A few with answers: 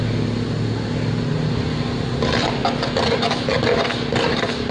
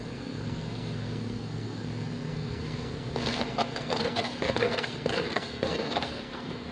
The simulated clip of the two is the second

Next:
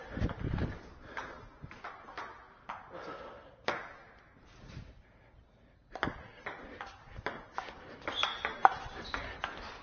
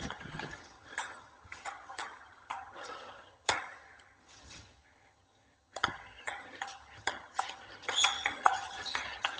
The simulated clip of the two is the second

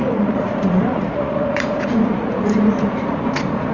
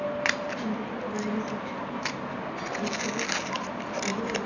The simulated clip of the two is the first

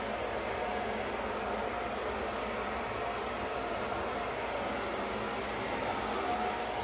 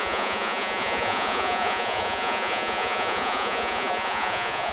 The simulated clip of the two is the second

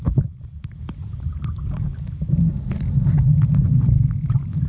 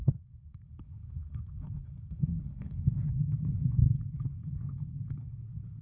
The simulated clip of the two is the second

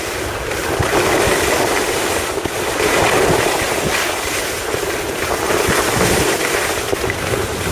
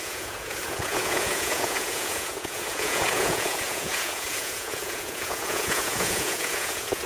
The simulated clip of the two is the second